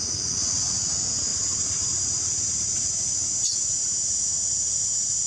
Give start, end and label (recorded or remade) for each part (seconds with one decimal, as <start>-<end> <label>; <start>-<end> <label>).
0.0-5.3 recorded